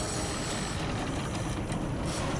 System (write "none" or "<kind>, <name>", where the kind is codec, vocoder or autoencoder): vocoder, BigVGAN v2